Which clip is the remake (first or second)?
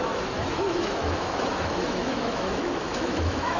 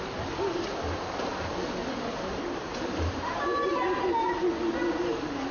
first